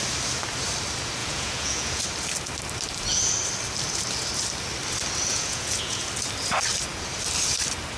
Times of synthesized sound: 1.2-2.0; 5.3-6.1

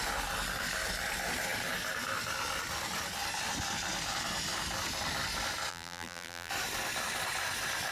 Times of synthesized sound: 5.7-6.5

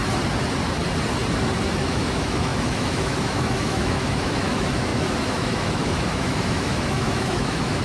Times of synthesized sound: 1.8-7.8

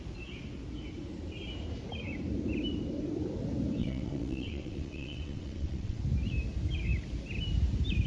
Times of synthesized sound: 3.8-6.0

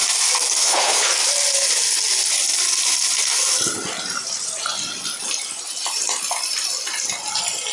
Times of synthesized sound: 0.6-1.1

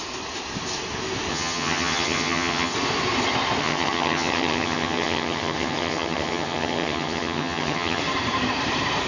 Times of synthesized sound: 1.3-2.7; 3.6-8.0